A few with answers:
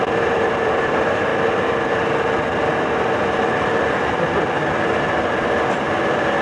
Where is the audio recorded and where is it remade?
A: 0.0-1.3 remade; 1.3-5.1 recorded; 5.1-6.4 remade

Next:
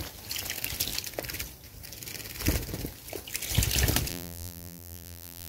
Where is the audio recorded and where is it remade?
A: 0.0-4.1 recorded; 4.1-5.5 remade

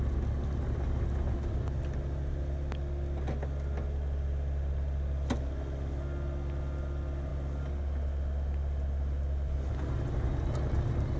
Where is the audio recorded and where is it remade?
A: 0.0-11.2 recorded

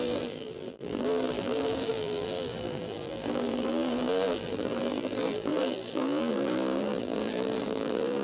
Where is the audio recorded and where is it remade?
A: 0.0-8.2 remade